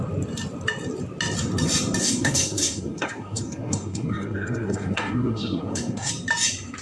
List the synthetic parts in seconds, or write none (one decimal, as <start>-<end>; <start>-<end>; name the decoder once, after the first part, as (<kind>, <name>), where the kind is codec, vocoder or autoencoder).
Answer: 2.0-6.1 (codec, SNAC)